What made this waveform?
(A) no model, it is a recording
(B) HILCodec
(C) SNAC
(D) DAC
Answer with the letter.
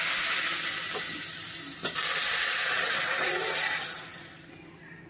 A